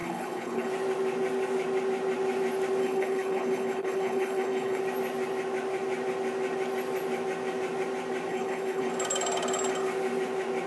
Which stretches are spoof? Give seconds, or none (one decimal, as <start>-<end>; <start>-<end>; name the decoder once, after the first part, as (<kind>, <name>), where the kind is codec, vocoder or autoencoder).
0.0-0.7 (codec, HILCodec); 2.8-4.8; 8.3-8.9